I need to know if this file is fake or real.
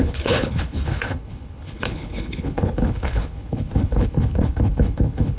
fake